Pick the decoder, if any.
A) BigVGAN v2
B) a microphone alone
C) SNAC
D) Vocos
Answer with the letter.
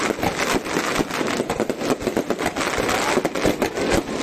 B